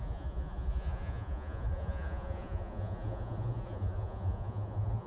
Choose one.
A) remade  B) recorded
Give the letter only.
A